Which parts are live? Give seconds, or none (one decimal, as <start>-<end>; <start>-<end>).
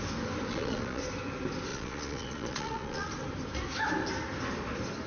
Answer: 0.0-0.5; 1.0-1.7; 3.1-5.1